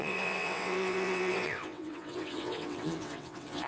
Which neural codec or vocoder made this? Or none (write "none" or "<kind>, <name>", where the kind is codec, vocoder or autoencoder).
vocoder, WaveNeXt